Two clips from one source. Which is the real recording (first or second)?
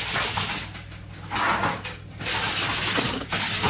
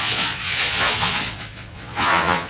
first